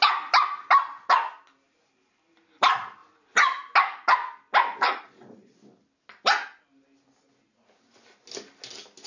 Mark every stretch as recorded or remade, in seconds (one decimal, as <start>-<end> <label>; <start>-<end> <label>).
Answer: 0.0-4.7 recorded; 4.7-5.5 remade; 5.5-9.1 recorded